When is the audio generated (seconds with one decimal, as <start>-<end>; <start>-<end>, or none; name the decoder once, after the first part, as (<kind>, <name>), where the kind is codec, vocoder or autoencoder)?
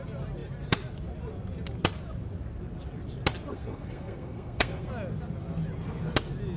3.5-4.9 (codec, SNAC)